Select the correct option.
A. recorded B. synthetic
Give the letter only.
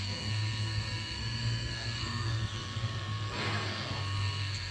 B